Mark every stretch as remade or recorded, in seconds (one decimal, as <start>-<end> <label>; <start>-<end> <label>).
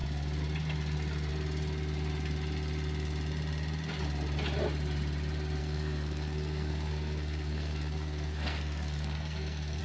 0.0-5.6 recorded; 5.6-9.8 remade